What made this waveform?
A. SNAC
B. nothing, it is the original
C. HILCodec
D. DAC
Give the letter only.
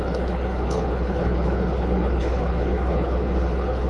C